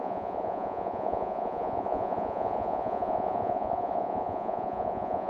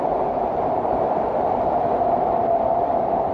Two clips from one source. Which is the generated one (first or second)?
first